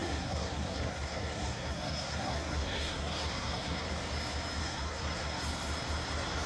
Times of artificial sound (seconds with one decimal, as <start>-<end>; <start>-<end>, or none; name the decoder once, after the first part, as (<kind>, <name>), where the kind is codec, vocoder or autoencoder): 0.0-3.9 (codec, SNAC); 4.6-5.4